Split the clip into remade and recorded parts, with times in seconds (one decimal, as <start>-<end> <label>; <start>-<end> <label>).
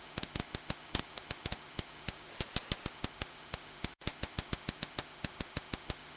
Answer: 0.0-2.3 remade; 2.3-2.9 recorded; 2.9-6.2 remade